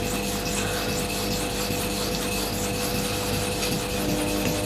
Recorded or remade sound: recorded